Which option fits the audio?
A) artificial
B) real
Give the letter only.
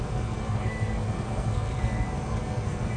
A